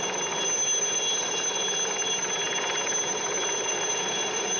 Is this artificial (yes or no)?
no